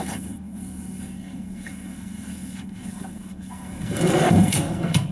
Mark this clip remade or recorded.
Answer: remade